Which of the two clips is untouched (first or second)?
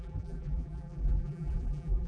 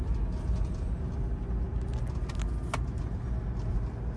second